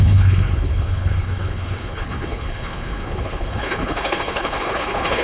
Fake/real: fake